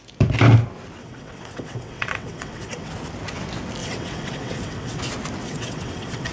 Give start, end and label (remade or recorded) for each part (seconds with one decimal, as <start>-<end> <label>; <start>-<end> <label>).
0.0-1.0 recorded; 1.0-2.9 remade; 2.9-3.8 recorded; 3.8-5.0 remade; 5.0-5.4 recorded; 5.4-6.3 remade